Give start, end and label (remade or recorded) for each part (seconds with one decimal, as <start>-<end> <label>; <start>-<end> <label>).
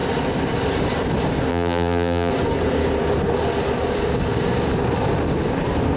0.0-1.5 recorded; 1.5-2.3 remade; 2.3-6.0 recorded